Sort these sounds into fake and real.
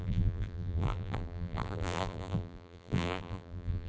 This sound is fake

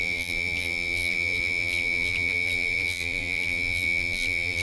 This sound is fake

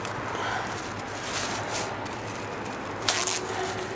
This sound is real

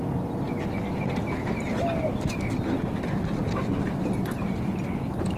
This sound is real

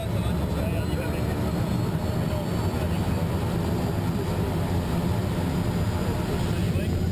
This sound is real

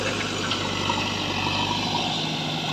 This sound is real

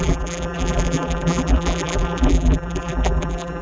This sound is fake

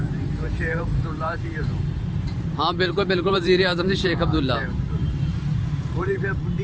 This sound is fake